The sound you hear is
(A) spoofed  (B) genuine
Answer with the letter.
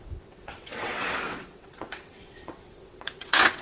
A